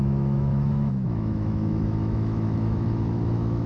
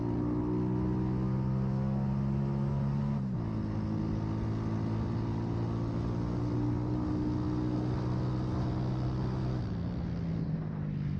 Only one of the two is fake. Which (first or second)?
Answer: first